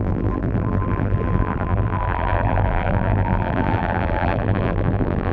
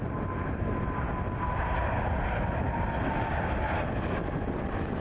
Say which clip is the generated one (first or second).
first